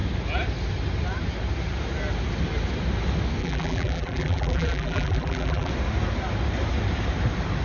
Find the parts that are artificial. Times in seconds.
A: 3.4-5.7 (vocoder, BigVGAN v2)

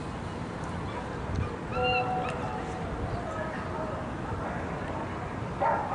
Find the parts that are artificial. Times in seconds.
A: none

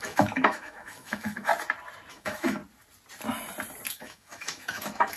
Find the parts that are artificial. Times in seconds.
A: 0.0-1.5 (autoencoder, DAC-VAE); 2.1-2.6; 3.9-5.2

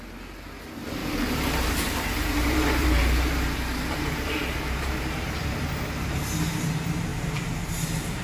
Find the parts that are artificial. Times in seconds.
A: 1.0-5.6 (vocoder, BigVGAN v2); 7.1-8.2

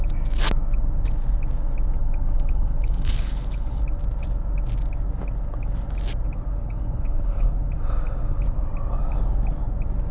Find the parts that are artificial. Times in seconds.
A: 2.0-3.8 (codec, HILCodec); 6.6-7.5

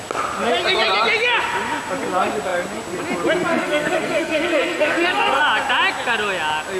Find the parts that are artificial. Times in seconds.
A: 3.5-5.4 (codec, SNAC)